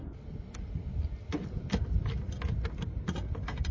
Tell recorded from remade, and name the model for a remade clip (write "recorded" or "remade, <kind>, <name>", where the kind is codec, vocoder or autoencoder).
recorded